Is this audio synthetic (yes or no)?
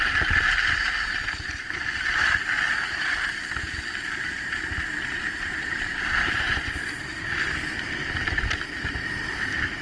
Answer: no